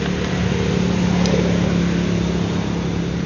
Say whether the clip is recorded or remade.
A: recorded